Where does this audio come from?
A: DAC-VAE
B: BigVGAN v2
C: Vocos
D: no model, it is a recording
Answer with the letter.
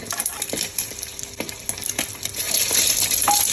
D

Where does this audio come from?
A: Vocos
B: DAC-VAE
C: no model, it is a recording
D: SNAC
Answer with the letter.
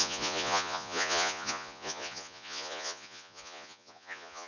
A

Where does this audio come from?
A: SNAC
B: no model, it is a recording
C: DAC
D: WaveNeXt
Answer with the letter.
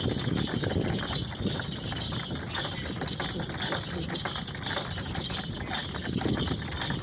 B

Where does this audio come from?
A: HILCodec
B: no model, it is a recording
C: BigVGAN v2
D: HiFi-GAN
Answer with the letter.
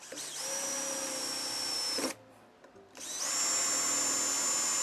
B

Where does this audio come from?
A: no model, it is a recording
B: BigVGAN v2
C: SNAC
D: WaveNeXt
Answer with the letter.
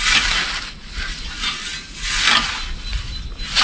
A